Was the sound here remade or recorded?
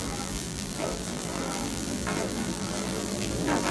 remade